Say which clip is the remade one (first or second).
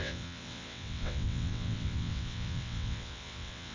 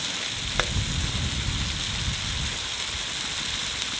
first